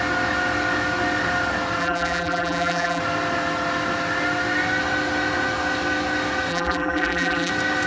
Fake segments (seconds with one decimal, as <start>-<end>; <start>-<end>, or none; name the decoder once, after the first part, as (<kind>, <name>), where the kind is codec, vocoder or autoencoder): 1.8-3.0 (vocoder, BigVGAN v2); 6.5-7.5